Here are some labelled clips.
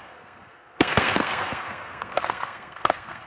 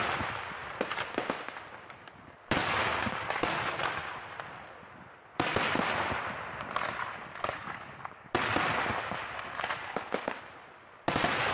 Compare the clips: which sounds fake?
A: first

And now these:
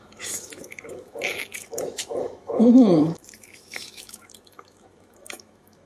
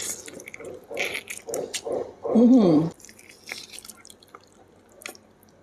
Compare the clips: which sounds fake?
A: first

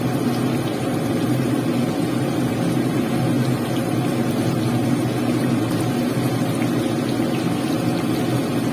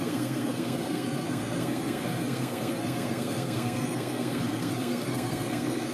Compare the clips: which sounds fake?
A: second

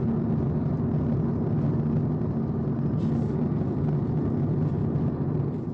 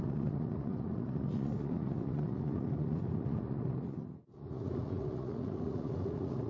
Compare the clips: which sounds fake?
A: second